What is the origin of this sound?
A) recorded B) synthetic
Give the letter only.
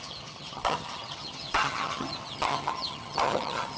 B